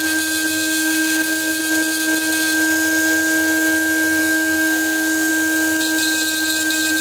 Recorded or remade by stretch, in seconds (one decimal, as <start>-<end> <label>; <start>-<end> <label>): 0.0-0.5 recorded; 0.5-1.6 remade; 1.6-4.2 recorded; 4.2-5.3 remade; 5.3-7.0 recorded